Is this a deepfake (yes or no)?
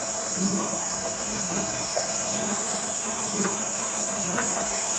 yes